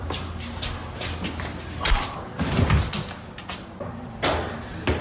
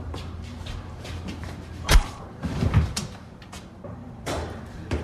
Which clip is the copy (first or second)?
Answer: second